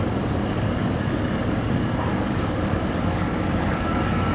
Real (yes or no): no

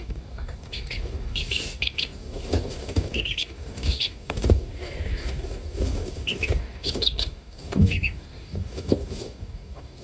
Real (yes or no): no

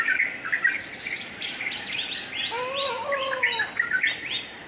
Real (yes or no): yes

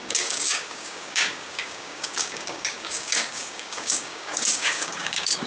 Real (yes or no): no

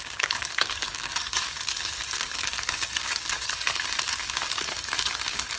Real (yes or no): no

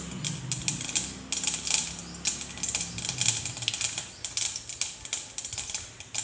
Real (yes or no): yes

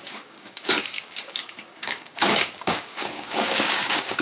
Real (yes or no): no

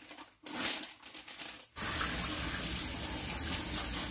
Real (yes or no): yes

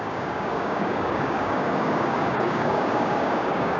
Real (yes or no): no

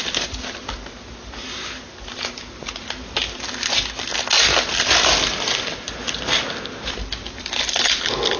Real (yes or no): yes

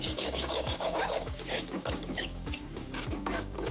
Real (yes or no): no